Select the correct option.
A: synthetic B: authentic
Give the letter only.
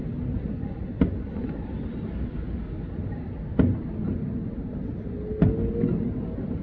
B